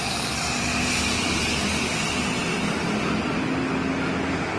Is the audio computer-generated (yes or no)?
no